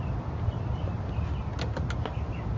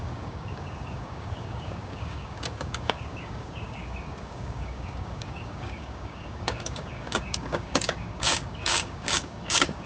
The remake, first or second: second